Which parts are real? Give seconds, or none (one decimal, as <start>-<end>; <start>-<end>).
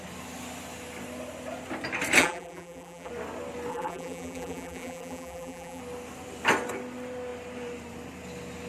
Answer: 0.0-2.2; 3.1-3.7; 5.8-8.7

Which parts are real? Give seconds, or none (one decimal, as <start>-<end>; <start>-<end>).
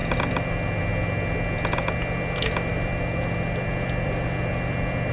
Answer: 0.8-2.7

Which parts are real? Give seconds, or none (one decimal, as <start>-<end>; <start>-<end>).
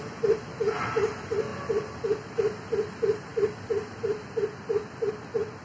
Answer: 1.5-2.9; 3.3-5.6